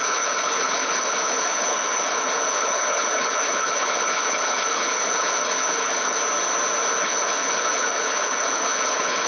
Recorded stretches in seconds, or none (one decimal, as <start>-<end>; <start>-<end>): 6.2-6.9